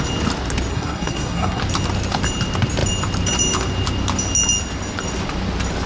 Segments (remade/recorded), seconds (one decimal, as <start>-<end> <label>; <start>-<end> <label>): 0.0-0.7 recorded; 0.7-1.6 remade; 1.6-5.9 recorded